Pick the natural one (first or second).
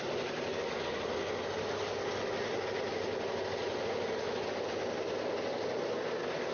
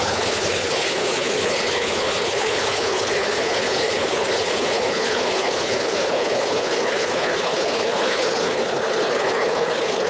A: first